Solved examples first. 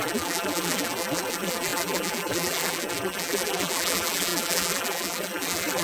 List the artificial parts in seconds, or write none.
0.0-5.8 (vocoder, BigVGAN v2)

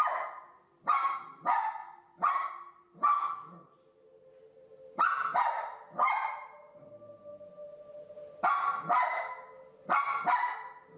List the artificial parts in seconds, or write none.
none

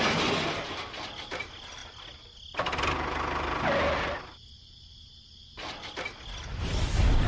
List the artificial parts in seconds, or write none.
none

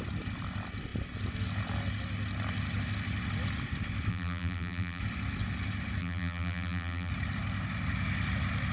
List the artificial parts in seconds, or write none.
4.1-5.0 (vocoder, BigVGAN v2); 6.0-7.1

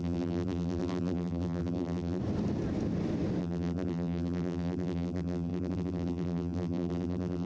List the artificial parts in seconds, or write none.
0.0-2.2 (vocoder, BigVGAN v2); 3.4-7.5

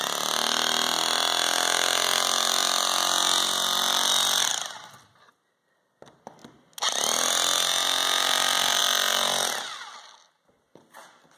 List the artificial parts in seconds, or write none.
none

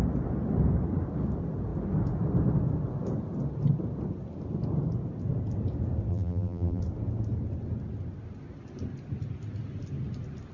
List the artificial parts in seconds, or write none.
6.1-6.8 (vocoder, BigVGAN v2)

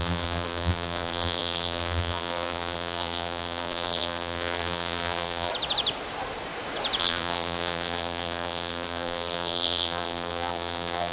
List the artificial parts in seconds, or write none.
0.0-5.5 (vocoder, BigVGAN v2); 7.0-11.1